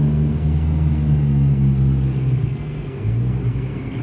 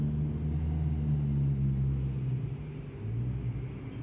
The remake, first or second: first